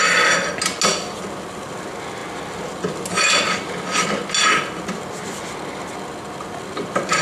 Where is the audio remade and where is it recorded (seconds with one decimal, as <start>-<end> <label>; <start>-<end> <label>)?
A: 0.0-7.2 recorded